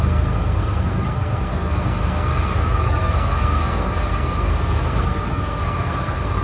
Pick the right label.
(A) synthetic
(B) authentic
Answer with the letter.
A